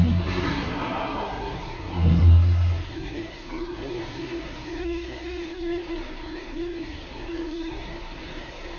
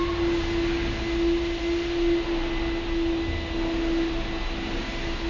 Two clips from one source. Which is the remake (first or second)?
first